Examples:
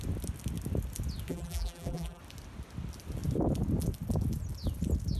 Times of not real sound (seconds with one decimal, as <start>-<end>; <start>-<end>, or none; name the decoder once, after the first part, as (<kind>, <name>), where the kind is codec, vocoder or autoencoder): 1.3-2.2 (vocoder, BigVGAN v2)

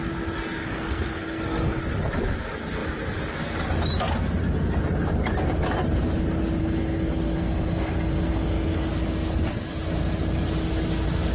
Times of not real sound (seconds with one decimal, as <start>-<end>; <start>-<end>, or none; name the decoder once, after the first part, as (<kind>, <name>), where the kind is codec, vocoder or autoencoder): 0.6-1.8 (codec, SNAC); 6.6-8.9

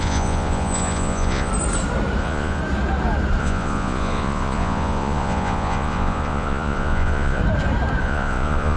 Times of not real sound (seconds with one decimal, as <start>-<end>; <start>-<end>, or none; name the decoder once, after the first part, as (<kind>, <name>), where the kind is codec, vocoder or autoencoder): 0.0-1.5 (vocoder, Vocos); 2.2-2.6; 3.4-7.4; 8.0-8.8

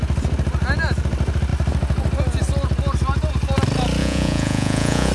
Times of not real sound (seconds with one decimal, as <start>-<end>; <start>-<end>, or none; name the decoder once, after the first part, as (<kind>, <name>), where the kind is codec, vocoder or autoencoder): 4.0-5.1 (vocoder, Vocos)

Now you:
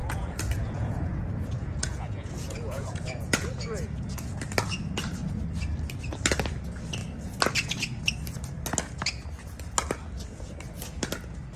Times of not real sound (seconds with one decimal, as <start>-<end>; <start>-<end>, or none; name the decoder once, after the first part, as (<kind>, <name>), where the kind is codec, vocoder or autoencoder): 0.0-4.4 (vocoder, Vocos)

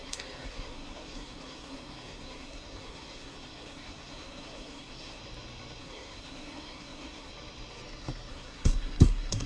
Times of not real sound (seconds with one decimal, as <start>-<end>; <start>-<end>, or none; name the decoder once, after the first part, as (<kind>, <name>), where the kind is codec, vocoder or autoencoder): 0.0-5.2 (codec, SNAC); 5.8-7.3; 8.3-9.5